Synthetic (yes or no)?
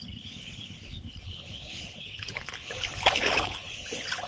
yes